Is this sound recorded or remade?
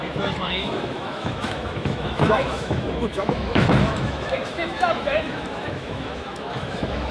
remade